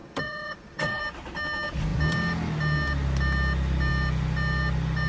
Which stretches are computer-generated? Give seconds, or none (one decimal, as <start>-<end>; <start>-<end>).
0.0-1.0